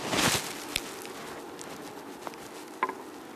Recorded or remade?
recorded